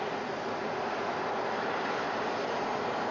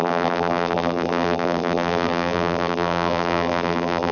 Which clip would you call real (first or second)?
first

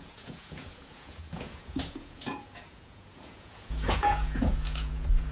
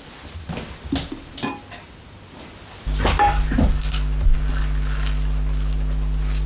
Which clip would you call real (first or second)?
second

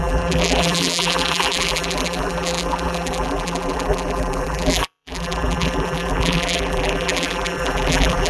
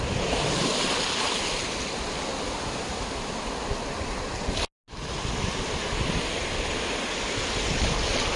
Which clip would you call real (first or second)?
second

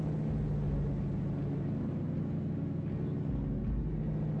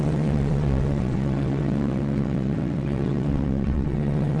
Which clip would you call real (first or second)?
first